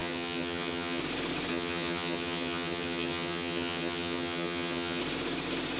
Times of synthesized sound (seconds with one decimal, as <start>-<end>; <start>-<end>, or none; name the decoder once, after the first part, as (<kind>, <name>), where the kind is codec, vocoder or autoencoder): 0.0-1.0 (vocoder, HiFi-GAN); 1.5-5.0